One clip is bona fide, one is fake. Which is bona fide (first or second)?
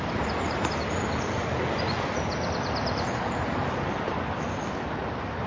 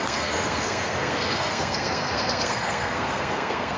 first